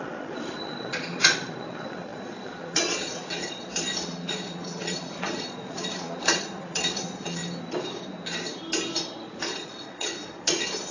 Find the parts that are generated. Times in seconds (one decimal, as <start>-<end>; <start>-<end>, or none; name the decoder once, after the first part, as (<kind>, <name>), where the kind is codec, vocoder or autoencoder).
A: 0.0-7.4 (vocoder, Vocos); 9.1-10.9